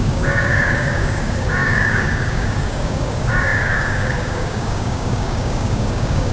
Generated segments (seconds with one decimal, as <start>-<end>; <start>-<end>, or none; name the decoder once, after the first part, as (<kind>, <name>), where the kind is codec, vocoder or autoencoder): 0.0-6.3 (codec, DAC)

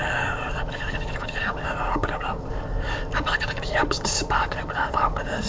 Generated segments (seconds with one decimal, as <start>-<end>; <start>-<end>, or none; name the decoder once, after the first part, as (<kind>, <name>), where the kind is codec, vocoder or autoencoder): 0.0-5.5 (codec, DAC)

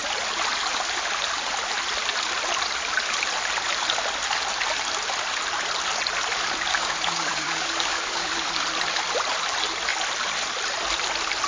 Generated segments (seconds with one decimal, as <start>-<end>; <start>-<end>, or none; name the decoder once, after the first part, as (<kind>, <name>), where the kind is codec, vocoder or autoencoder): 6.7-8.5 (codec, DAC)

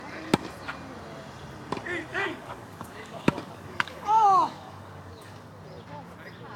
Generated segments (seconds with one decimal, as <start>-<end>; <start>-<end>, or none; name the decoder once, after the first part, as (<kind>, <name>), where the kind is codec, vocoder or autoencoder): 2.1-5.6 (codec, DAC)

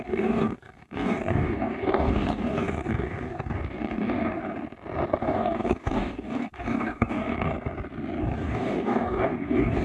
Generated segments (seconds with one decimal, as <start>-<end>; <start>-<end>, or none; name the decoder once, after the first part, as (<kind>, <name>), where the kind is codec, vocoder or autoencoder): 0.0-4.4 (codec, DAC); 5.2-7.5; 8.2-9.8

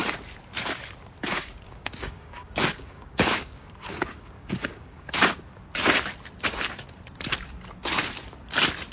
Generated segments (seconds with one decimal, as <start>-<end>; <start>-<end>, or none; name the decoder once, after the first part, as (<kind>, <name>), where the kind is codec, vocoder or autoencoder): 1.3-5.3 (codec, DAC)

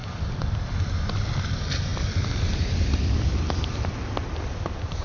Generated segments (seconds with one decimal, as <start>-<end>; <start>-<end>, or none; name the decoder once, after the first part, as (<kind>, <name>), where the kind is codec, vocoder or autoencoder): none

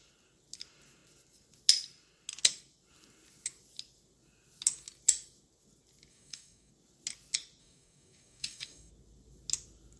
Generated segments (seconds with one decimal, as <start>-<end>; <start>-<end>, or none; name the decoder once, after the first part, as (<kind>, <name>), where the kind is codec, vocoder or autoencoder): 6.1-6.7 (codec, DAC); 7.6-8.9